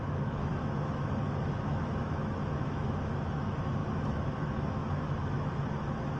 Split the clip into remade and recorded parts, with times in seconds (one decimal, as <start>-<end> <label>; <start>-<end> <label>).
0.0-6.2 remade